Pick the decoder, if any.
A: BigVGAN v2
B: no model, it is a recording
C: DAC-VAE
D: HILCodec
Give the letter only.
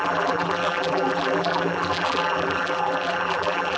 A